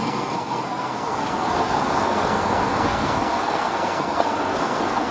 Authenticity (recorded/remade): remade